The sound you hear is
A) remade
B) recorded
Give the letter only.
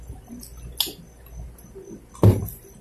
B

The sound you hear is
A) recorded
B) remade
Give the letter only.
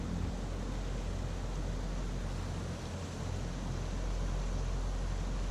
A